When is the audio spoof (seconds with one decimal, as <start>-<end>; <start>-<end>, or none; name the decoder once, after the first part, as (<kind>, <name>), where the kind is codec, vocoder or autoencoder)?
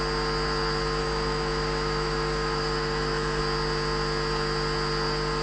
1.0-3.4 (autoencoder, DAC-VAE)